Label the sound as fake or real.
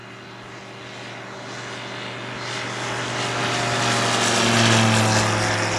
real